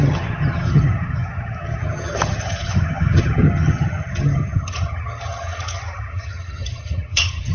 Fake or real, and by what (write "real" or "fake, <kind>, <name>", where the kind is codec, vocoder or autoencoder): fake, vocoder, HiFi-GAN